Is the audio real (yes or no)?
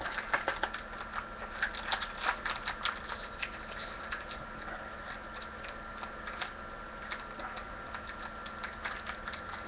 yes